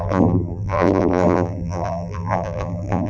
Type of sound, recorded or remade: remade